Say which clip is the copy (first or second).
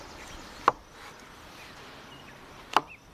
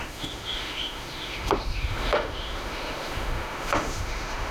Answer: second